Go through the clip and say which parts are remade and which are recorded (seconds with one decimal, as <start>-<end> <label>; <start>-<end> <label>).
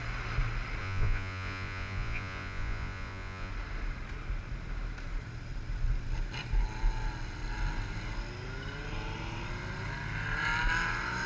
0.0-0.8 recorded; 0.8-3.5 remade; 3.5-11.3 recorded